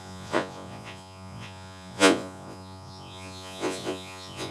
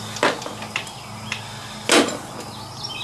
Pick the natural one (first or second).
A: second